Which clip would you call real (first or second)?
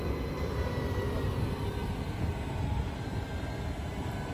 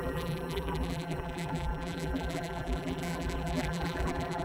first